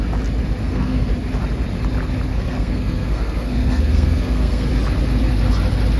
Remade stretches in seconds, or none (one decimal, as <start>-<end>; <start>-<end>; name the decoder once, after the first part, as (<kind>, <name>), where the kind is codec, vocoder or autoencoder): 0.6-1.1 (codec, SNAC); 2.3-4.7